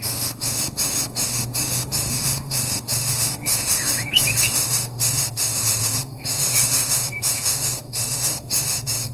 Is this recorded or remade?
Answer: remade